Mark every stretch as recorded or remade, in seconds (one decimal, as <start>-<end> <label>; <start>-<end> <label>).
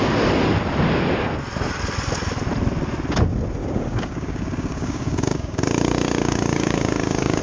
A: 0.0-3.6 recorded; 3.6-7.4 remade